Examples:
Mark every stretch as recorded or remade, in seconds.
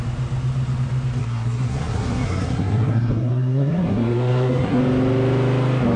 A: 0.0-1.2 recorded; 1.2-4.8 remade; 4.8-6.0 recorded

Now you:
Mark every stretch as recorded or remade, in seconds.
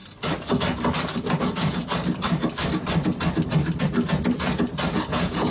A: 0.0-1.4 recorded; 1.4-1.8 remade; 1.8-5.1 recorded; 5.1-5.5 remade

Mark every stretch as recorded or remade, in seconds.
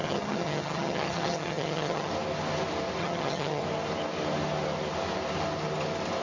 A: 0.0-2.1 remade; 2.1-3.0 recorded; 3.0-3.6 remade; 3.6-6.2 recorded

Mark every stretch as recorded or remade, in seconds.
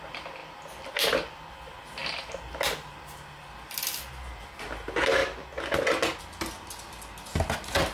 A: 0.0-7.9 recorded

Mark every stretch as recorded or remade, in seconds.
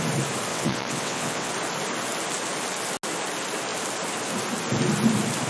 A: 0.0-0.5 recorded; 0.5-1.5 remade; 1.5-5.5 recorded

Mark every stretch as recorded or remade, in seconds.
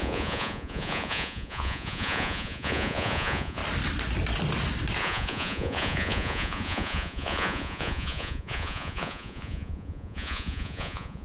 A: 0.0-3.6 remade; 3.6-5.0 recorded; 5.0-11.2 remade